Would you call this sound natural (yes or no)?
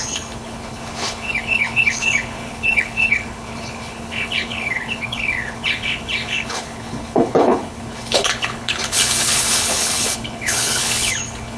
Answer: no